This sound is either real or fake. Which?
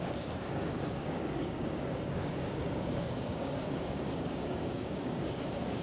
fake